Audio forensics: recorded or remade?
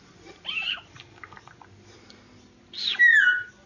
recorded